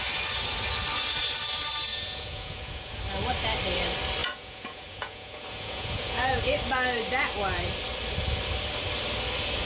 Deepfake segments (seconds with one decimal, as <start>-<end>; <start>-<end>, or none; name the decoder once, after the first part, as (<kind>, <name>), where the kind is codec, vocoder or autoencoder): 1.9-3.0 (vocoder, Vocos); 4.2-6.4